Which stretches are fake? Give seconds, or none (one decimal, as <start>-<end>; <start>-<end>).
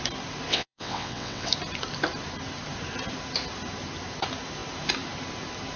0.5-1.5